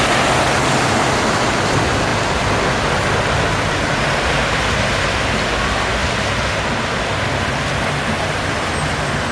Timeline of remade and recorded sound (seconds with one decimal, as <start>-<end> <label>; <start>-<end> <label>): 0.0-9.3 recorded

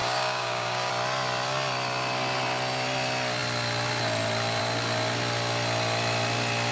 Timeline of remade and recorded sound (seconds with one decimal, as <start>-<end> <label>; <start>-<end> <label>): 0.0-0.9 remade; 0.9-6.7 recorded